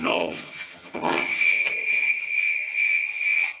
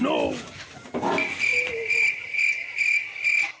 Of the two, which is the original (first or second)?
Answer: second